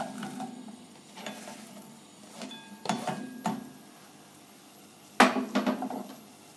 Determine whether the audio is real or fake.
real